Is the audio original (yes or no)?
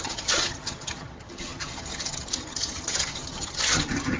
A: no